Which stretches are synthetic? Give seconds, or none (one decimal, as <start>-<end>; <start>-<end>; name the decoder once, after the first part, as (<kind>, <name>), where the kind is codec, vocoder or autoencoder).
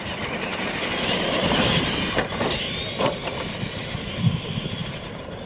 none